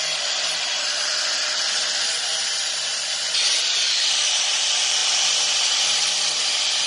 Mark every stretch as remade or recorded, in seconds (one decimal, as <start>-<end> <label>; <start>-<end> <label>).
0.0-6.9 remade